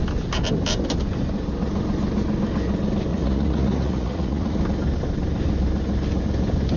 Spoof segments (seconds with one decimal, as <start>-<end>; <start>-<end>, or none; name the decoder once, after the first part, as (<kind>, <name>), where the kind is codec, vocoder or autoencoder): 3.1-4.6 (vocoder, Vocos)